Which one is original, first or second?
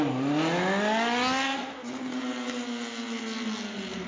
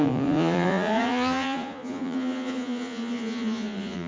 first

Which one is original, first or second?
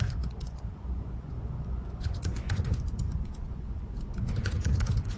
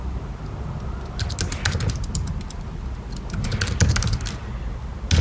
second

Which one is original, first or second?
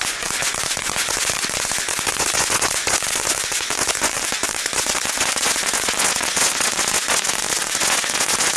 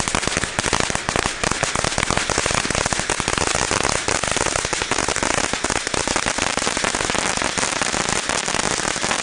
second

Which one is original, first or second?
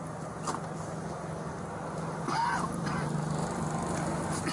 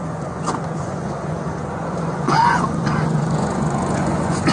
first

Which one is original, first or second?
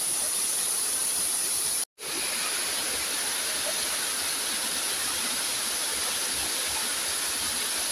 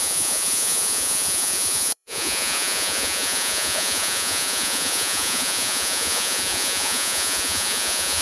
first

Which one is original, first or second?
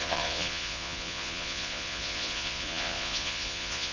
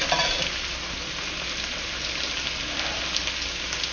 second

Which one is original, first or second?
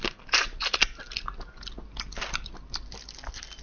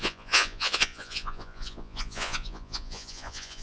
first